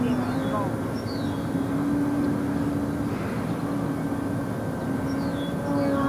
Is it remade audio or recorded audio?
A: recorded